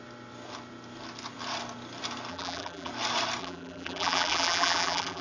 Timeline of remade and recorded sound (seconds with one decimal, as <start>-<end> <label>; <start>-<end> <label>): 0.0-2.3 recorded; 2.3-2.9 remade; 2.9-3.4 recorded; 3.4-5.2 remade

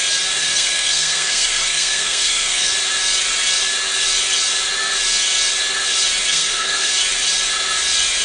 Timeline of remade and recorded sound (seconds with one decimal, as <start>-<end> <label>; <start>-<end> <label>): 0.0-0.4 recorded; 0.4-2.7 remade; 2.7-6.3 recorded; 6.3-6.9 remade; 6.9-8.2 recorded